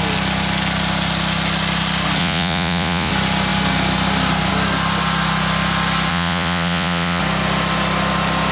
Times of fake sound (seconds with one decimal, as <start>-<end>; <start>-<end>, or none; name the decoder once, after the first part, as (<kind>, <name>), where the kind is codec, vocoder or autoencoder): 2.2-3.1 (vocoder, Vocos); 6.1-7.2